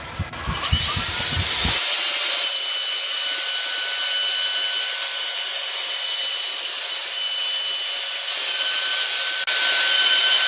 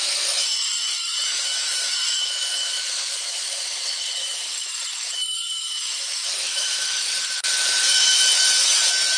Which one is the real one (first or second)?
first